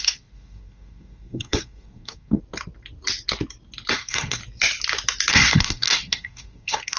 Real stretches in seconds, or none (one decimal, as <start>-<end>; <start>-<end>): 2.4-3.9; 4.4-5.3